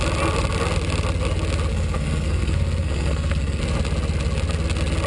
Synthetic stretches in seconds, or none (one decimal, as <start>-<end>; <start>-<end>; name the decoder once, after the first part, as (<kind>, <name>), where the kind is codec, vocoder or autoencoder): 1.7-3.6 (codec, SNAC)